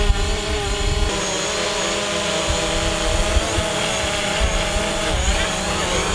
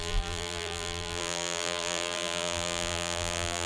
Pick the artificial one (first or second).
second